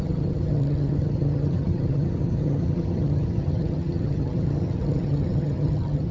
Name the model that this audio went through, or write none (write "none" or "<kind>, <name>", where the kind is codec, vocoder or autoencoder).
vocoder, HiFi-GAN